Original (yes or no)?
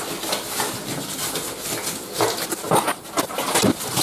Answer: yes